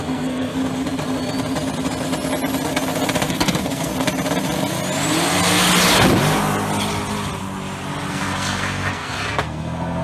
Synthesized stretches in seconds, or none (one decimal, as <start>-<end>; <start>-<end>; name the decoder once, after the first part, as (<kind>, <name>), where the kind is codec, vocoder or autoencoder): 0.0-0.6 (codec, SNAC); 3.3-3.9; 8.1-10.0